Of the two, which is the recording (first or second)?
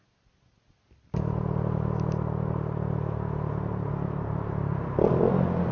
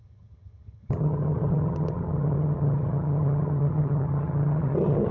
first